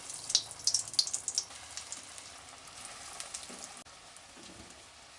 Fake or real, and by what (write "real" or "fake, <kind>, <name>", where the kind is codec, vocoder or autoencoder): real